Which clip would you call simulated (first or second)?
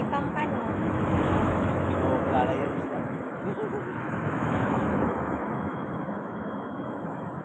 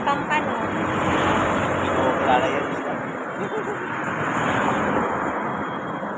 first